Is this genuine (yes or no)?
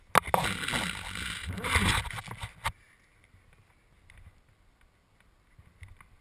yes